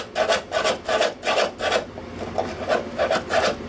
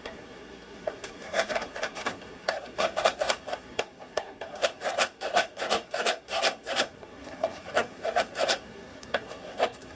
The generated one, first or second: second